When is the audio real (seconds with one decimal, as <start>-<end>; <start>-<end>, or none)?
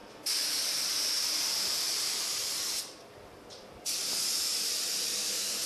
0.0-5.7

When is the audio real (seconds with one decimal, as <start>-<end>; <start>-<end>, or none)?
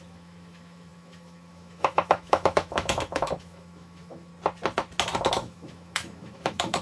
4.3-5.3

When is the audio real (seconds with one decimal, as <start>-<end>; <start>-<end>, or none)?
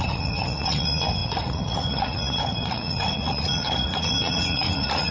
none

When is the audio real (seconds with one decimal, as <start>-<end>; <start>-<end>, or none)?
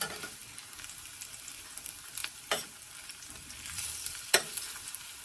0.0-5.2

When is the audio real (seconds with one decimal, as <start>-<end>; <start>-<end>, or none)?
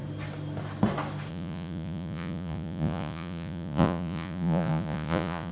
0.0-1.3